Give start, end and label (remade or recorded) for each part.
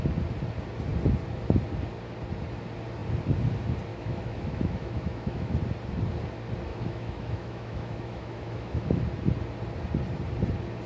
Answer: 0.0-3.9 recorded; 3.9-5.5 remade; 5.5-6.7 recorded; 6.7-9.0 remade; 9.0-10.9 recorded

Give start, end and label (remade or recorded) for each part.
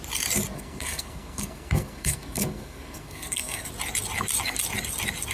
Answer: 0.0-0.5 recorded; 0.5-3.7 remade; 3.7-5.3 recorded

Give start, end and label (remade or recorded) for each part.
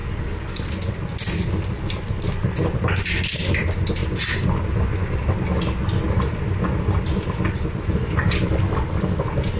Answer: 0.0-0.6 remade; 0.6-8.0 recorded; 8.0-9.2 remade; 9.2-9.6 recorded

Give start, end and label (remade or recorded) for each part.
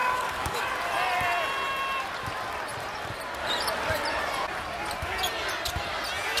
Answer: 0.0-0.6 remade; 0.6-6.4 recorded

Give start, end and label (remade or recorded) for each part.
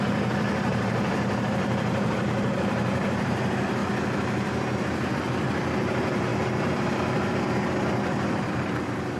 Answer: 0.0-0.7 recorded; 0.7-3.4 remade; 3.4-9.2 recorded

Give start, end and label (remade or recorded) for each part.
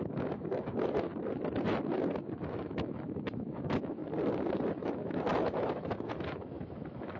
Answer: 0.0-1.1 remade; 1.1-2.1 recorded; 2.1-4.0 remade; 4.0-4.8 recorded; 4.8-7.2 remade